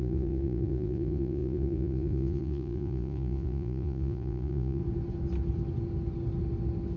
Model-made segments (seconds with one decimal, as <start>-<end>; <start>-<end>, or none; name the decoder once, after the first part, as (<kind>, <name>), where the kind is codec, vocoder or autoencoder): 0.0-4.8 (vocoder, Vocos)